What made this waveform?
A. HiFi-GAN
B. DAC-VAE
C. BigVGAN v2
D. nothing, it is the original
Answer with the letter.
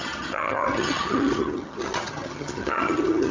A